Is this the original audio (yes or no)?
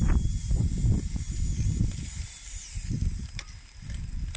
no